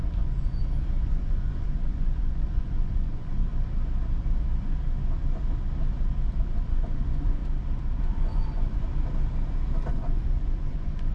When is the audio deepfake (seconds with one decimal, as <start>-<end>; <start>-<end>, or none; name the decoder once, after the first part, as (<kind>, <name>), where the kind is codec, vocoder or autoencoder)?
0.0-0.6 (vocoder, Vocos); 1.1-3.4; 6.4-7.4; 8.0-8.9; 9.9-11.1